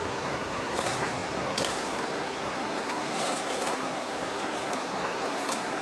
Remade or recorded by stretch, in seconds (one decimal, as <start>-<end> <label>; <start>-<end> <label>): 0.0-5.8 remade